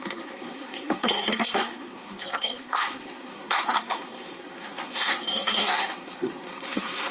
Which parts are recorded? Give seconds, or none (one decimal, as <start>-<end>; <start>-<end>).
none